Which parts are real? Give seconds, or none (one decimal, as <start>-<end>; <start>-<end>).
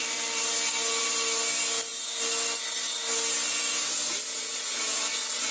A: 0.0-3.5